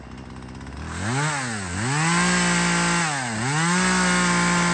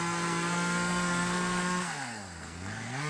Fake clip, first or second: second